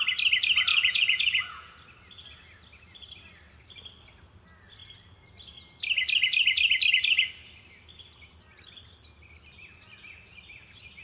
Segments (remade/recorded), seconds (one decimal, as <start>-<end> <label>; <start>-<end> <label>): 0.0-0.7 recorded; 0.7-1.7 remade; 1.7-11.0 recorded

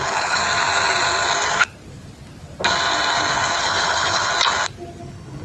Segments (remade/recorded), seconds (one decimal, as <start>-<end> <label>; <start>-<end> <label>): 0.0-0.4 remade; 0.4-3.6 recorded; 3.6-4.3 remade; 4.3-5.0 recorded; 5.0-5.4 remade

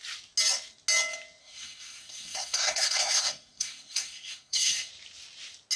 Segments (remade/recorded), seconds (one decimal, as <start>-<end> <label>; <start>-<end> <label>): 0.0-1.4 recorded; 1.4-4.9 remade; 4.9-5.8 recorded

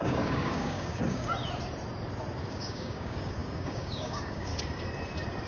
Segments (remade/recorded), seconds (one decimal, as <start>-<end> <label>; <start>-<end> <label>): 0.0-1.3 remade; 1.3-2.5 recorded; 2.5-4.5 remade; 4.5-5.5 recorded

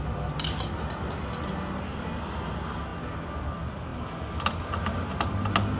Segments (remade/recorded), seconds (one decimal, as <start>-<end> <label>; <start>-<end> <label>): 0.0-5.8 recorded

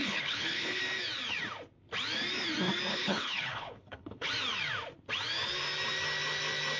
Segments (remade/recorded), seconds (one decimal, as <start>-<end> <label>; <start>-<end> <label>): 0.0-0.8 remade; 0.8-2.9 recorded; 2.9-4.3 remade; 4.3-6.8 recorded

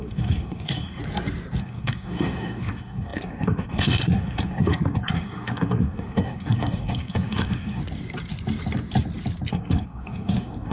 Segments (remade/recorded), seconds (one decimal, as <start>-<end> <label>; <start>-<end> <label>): 0.0-1.0 remade; 1.0-1.6 recorded; 1.6-7.8 remade; 7.8-9.5 recorded; 9.5-10.7 remade